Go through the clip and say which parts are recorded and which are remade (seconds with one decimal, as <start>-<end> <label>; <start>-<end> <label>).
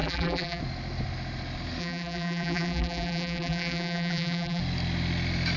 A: 0.0-0.6 remade; 0.6-1.8 recorded; 1.8-4.6 remade; 4.6-5.6 recorded